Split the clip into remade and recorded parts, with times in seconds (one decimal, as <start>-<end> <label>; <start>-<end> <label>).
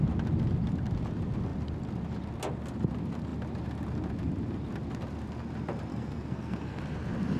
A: 0.0-5.9 recorded; 5.9-6.8 remade; 6.8-7.4 recorded